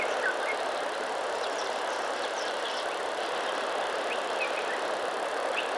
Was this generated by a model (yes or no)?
yes